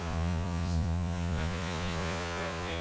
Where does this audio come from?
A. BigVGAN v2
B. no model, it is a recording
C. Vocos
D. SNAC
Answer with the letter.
C